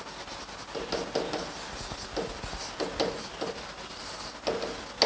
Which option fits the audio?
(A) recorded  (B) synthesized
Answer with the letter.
A